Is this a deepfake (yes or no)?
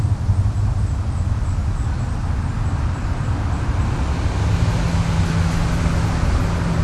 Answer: no